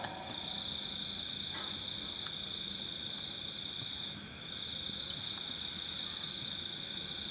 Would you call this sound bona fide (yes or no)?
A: yes